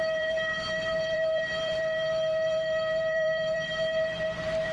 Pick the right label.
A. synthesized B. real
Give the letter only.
A